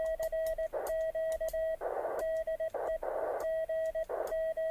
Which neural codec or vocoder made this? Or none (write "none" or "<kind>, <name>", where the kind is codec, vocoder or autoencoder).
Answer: none